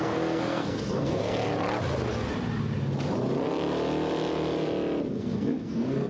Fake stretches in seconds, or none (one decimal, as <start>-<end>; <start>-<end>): 0.0-1.4; 5.1-6.1